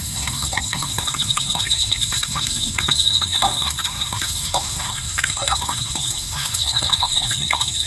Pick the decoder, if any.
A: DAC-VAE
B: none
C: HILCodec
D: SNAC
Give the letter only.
D